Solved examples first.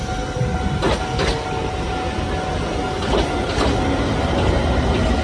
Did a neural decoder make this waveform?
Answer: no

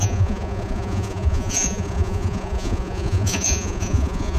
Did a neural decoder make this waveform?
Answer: yes